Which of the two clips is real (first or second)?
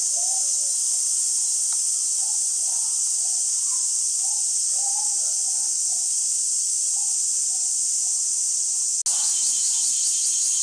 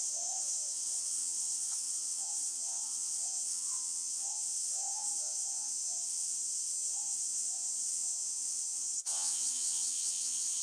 first